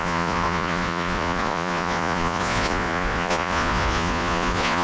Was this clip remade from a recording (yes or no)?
yes